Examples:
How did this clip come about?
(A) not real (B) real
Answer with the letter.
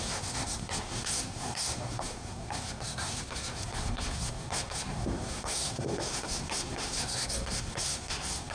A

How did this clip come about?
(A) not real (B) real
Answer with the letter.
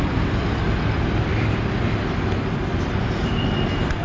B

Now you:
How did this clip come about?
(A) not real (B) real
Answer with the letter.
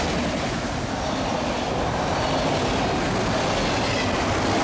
B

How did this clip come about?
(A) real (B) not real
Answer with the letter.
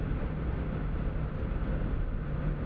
A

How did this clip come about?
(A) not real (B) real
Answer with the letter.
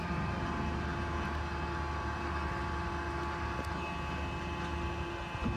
B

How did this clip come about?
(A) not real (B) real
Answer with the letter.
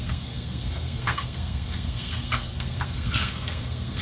A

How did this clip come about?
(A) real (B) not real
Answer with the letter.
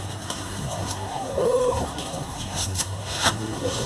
B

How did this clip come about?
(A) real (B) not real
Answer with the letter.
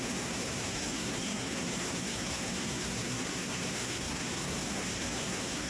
B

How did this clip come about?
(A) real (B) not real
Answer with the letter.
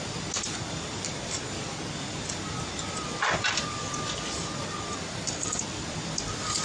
A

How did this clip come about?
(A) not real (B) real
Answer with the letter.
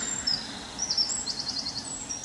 B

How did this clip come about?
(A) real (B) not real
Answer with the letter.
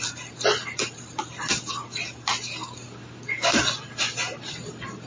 A